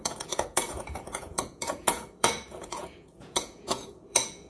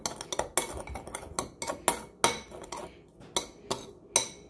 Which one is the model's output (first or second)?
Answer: first